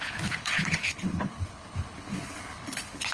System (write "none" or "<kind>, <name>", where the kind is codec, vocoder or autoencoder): codec, HILCodec